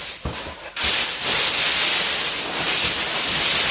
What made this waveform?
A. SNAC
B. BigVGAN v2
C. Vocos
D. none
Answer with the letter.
D